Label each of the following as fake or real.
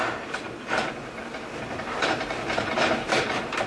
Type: fake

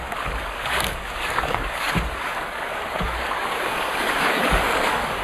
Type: fake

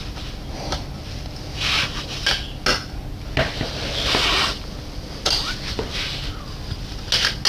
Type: real